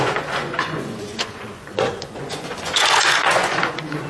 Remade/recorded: remade